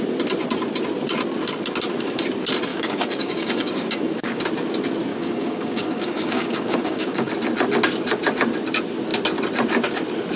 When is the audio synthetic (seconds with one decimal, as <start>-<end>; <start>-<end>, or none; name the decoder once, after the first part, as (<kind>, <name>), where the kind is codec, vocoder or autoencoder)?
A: 2.7-4.4 (codec, DAC); 5.1-7.3